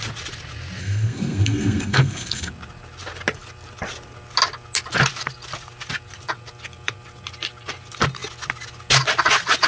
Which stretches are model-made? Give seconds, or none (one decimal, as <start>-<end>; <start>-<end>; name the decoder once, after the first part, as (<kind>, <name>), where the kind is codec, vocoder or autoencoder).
0.8-2.5 (codec, SNAC)